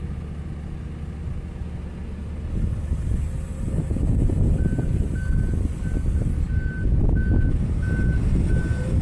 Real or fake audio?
real